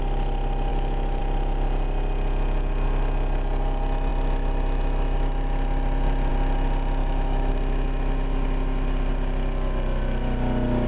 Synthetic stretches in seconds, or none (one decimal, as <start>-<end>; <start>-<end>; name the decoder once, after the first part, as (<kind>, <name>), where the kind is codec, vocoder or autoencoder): 0.7-1.2 (autoencoder, DAC-VAE); 7.0-7.5

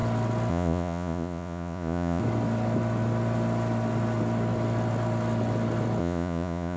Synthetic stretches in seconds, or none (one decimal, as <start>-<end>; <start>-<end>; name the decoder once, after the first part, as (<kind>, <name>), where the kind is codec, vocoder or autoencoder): 0.5-2.2 (vocoder, Vocos); 6.0-6.8

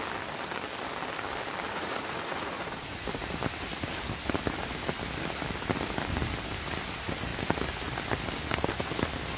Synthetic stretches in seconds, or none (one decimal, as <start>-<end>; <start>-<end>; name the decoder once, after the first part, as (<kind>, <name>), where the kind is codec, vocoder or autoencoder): 1.7-3.4 (vocoder, Vocos)

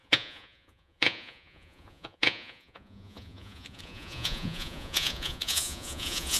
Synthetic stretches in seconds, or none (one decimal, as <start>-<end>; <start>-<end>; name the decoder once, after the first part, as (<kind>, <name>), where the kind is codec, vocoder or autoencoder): 0.0-6.4 (vocoder, Vocos)

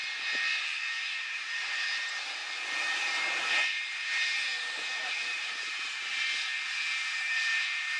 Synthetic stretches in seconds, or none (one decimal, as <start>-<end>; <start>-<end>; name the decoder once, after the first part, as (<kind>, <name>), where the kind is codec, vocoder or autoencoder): 0.9-2.4 (vocoder, BigVGAN v2); 3.5-6.1; 6.8-8.0